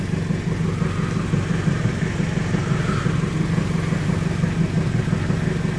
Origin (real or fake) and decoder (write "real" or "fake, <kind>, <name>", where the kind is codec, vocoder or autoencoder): real